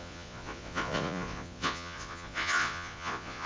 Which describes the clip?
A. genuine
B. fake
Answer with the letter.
B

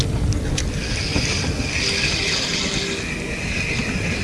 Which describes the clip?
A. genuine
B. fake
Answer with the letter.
A